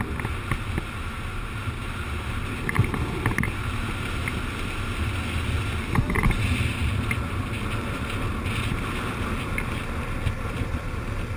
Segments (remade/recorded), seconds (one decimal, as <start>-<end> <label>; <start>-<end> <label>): 0.0-11.4 recorded